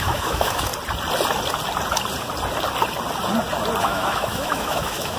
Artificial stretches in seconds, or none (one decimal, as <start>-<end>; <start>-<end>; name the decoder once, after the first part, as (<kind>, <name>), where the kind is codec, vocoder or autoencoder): 0.0-0.7 (autoencoder, DAC-VAE); 3.8-5.2